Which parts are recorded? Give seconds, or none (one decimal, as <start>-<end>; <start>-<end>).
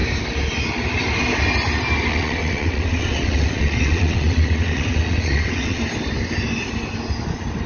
0.0-2.1; 5.8-7.7